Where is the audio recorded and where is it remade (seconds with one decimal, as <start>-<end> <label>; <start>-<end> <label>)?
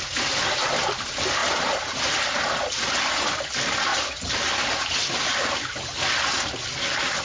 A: 0.0-1.4 recorded; 1.4-2.0 remade; 2.0-7.2 recorded